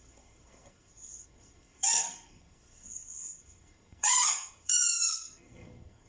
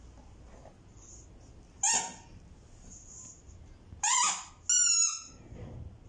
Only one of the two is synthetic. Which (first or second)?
first